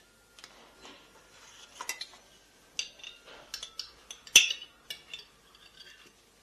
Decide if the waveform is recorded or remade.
recorded